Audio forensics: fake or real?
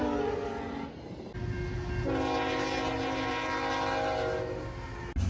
real